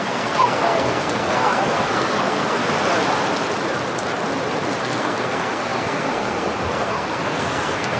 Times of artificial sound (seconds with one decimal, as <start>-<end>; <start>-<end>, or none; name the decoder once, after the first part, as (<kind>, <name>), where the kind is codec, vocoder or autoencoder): 0.0-2.6 (codec, SNAC); 4.8-8.0